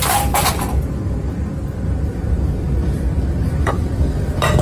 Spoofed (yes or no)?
no